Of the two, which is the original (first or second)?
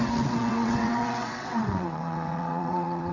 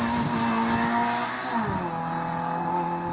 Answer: second